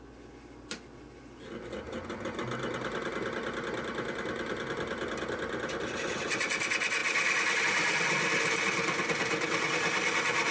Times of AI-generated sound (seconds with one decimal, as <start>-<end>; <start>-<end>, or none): none